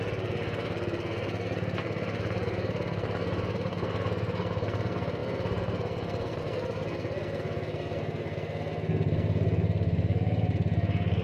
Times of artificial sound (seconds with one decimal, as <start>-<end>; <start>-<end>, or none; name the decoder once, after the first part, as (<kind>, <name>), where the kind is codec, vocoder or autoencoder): 0.0-11.2 (codec, SNAC)